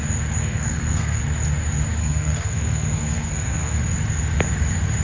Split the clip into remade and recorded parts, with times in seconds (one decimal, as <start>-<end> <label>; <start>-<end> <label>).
0.0-0.4 recorded; 0.4-1.2 remade; 1.2-2.0 recorded; 2.0-3.8 remade; 3.8-5.0 recorded